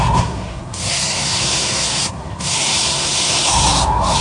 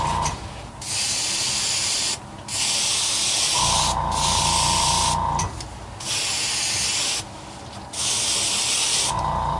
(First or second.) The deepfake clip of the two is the first